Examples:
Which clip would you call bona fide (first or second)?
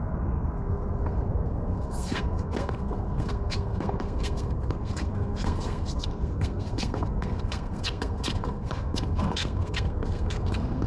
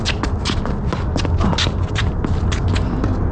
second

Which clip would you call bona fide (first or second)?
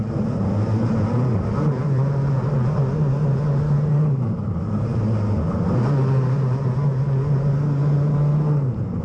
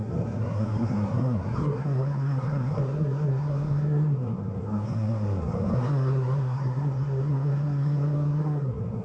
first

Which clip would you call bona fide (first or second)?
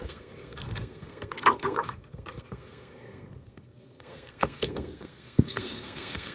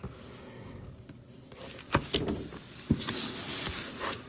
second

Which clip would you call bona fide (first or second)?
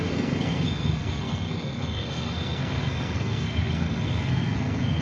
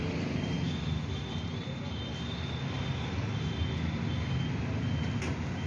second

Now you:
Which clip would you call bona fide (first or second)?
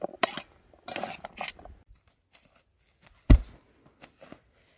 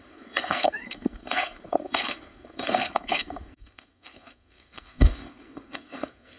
first